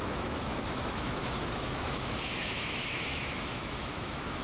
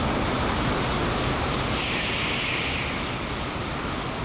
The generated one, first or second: first